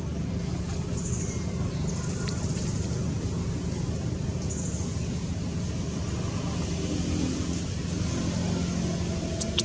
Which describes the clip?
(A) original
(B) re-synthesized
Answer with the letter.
A